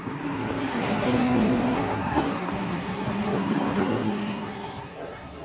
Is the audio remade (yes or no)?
yes